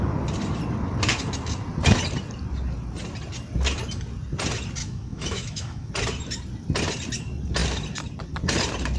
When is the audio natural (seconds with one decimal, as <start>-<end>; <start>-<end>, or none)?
0.0-4.8; 5.9-9.0